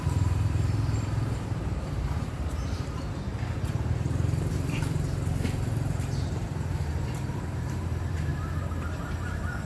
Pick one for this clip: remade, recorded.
remade